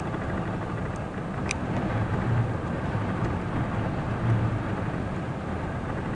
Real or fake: real